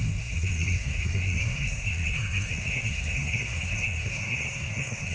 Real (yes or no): no